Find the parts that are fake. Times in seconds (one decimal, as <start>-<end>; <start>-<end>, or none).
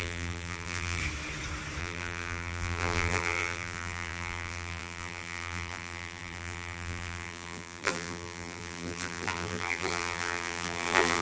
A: 0.0-1.0; 1.8-11.2